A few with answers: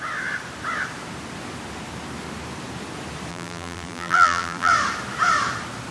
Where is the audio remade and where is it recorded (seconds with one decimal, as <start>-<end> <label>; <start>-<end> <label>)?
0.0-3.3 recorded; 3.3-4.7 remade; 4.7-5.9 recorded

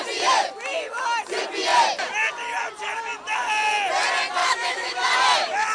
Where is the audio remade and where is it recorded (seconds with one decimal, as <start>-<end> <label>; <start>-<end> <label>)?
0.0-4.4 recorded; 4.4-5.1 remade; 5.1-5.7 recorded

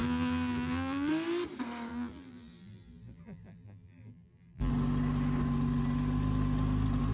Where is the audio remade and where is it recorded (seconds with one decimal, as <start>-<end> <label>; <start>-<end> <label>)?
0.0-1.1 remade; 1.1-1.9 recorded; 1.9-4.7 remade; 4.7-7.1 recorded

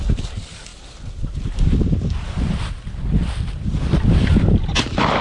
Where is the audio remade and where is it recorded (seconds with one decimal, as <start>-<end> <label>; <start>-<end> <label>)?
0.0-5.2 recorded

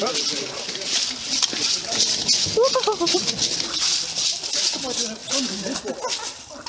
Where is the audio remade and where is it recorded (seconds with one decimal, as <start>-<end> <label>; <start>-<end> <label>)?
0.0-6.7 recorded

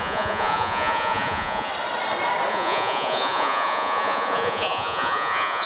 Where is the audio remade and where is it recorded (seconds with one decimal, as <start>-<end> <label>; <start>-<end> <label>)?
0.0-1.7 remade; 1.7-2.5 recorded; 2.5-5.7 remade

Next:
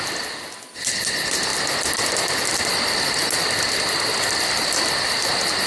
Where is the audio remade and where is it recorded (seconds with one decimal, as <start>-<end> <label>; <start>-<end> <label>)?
0.0-5.7 recorded

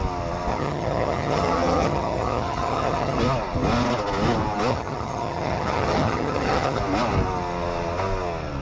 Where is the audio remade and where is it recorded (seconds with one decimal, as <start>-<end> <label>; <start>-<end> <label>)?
0.0-0.5 recorded; 0.5-3.2 remade; 3.2-4.7 recorded; 4.7-6.8 remade; 6.8-8.6 recorded